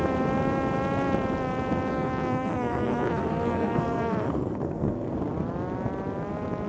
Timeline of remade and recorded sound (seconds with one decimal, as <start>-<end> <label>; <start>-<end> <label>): 0.0-1.9 recorded; 1.9-5.1 remade; 5.1-6.7 recorded